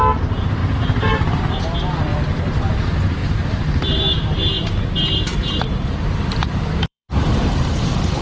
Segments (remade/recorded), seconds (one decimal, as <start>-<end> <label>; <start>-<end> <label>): 0.0-0.6 recorded; 0.6-1.5 remade; 1.5-2.1 recorded; 2.1-2.7 remade; 2.7-3.2 recorded; 3.2-4.8 remade; 4.8-5.3 recorded; 5.3-8.2 remade